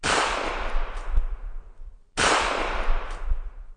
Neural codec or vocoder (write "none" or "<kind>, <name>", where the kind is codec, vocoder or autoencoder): none